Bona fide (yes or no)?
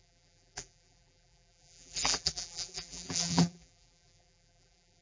no